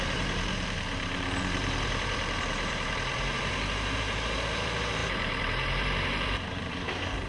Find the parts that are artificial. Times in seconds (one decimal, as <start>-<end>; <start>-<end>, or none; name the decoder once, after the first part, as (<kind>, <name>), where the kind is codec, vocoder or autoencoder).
0.0-7.3 (vocoder, BigVGAN v2)